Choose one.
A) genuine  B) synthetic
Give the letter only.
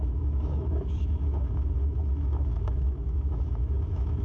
B